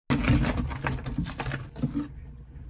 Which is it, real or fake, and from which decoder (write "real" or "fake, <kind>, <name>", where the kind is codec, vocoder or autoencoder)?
real